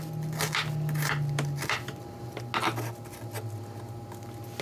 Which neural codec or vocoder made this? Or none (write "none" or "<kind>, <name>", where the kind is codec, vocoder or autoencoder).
none